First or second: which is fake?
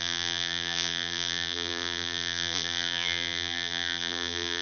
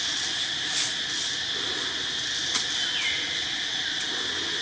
first